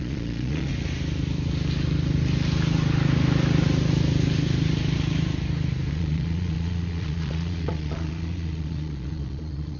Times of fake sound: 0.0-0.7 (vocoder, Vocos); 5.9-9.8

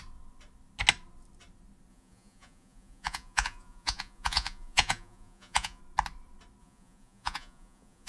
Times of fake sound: 1.9-5.8 (vocoder, Vocos); 6.6-8.1

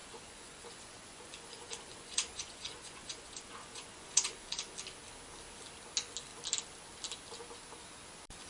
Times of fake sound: 0.0-4.6 (vocoder, Vocos)

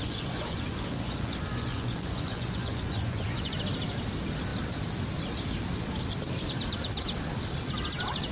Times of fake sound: 0.0-3.6 (vocoder, Vocos)

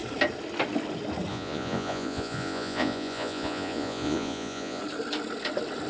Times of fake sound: 1.3-4.8 (vocoder, Vocos)

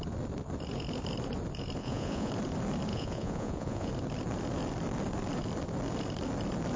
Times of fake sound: 1.8-2.3 (vocoder, Vocos); 2.9-3.9